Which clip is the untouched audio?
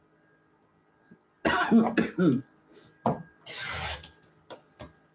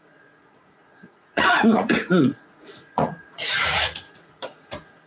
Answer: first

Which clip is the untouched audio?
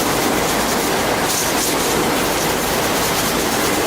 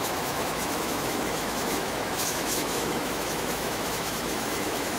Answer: first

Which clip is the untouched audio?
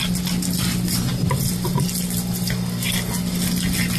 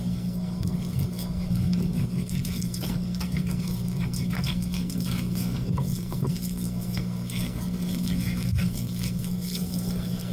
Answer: first